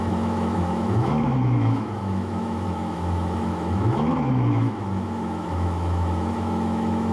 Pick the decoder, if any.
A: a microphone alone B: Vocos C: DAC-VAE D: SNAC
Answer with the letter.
C